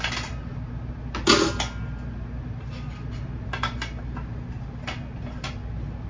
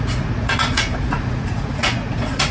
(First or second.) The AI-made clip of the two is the second